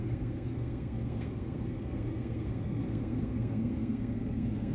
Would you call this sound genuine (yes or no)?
no